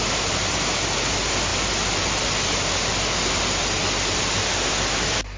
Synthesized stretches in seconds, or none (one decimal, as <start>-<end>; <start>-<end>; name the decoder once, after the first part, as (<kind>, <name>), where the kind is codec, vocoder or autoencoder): none